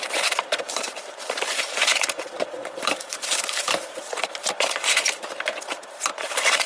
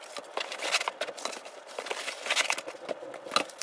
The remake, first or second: first